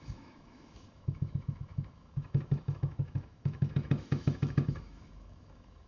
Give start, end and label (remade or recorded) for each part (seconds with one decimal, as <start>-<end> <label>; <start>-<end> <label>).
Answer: 0.0-5.9 remade